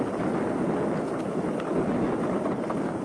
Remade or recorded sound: recorded